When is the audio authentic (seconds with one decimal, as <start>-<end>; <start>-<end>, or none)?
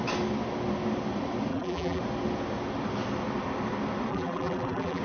0.0-1.5; 2.0-4.1